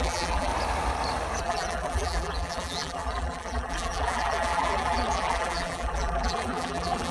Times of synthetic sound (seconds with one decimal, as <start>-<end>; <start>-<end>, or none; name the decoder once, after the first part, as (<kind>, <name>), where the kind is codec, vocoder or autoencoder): 0.0-0.5 (vocoder, BigVGAN v2); 1.4-7.1